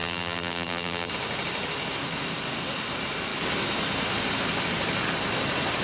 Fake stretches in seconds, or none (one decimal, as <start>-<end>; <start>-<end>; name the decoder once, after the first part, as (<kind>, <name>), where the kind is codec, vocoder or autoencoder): 0.0-1.1 (vocoder, BigVGAN v2)